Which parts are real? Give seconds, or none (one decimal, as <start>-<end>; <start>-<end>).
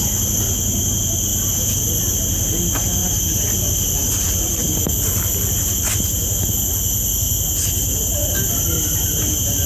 0.0-3.0; 5.9-7.8